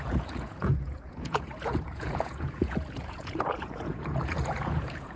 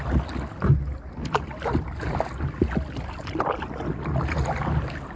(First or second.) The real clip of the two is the second